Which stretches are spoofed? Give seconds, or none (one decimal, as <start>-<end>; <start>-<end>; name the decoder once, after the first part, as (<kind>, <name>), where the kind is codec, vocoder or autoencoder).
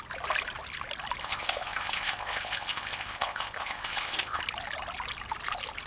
1.2-4.4 (codec, ZipCodec)